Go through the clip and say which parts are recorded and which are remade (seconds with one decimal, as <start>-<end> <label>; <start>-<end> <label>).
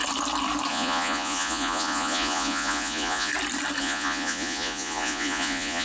0.0-0.7 recorded; 0.7-3.3 remade; 3.3-3.8 recorded; 3.8-5.8 remade